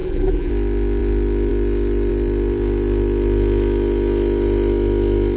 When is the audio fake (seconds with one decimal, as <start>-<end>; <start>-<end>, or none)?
0.0-0.5

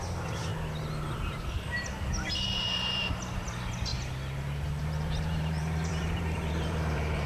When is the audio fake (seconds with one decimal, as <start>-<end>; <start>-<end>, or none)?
0.0-0.5; 2.3-3.9; 4.8-7.3

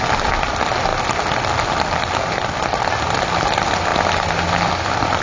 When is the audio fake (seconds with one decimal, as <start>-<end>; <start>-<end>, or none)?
none